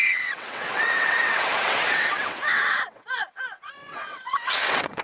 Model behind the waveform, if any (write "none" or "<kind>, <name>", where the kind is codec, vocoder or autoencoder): vocoder, WaveNeXt